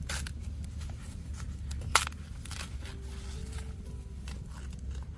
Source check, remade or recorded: recorded